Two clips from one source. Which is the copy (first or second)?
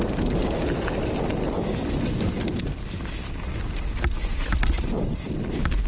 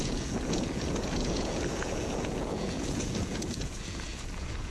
second